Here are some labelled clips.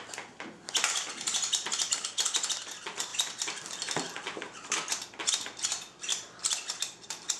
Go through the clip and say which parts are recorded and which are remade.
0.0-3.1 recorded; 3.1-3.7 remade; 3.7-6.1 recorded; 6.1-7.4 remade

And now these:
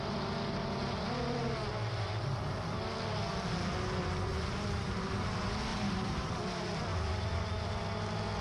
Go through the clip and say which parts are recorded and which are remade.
0.0-1.7 recorded; 1.7-2.8 remade; 2.8-4.3 recorded; 4.3-5.1 remade; 5.1-5.7 recorded; 5.7-6.3 remade; 6.3-8.4 recorded

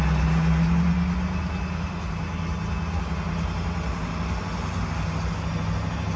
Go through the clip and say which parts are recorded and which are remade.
0.0-6.2 recorded